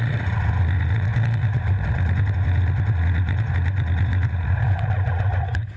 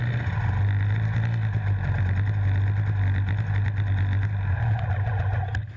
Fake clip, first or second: first